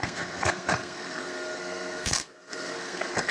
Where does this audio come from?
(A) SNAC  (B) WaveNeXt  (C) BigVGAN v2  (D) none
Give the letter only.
A